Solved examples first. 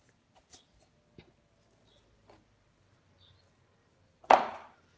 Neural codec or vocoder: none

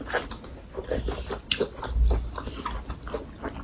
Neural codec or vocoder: none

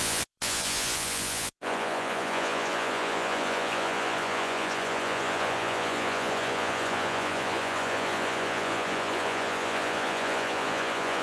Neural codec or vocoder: vocoder, Vocos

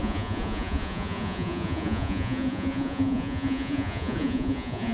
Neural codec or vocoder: vocoder, Vocos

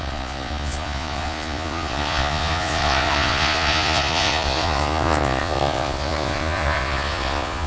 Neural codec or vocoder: vocoder, Vocos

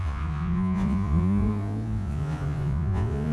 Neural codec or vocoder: vocoder, Vocos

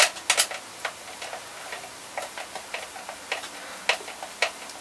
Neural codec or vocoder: none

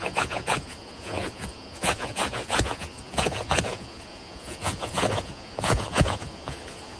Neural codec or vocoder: vocoder, Vocos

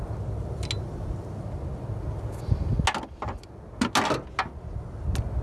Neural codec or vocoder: none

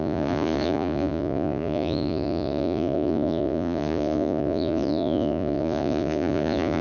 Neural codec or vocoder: vocoder, Vocos